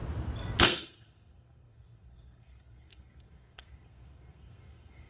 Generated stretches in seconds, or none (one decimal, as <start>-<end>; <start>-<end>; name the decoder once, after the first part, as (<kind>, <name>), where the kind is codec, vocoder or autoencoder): 0.6-5.1 (codec, SNAC)

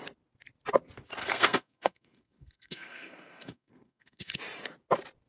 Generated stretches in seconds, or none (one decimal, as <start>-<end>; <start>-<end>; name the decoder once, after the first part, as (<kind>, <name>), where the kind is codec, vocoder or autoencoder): 1.2-4.4 (codec, SNAC)